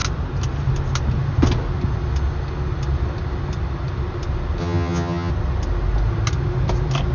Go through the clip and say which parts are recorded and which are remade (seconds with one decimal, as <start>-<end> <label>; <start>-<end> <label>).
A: 0.0-4.6 recorded; 4.6-5.3 remade; 5.3-7.1 recorded